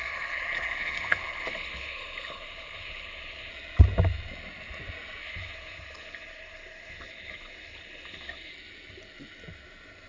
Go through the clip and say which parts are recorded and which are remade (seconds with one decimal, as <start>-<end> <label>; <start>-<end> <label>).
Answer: 0.0-3.5 remade; 3.5-5.2 recorded; 5.2-8.5 remade; 8.5-10.1 recorded